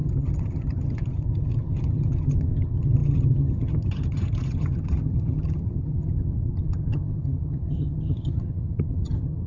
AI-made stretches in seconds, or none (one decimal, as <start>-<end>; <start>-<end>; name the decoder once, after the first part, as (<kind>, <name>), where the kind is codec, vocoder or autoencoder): 0.0-9.5 (vocoder, HiFi-GAN)